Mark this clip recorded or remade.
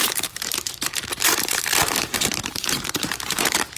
remade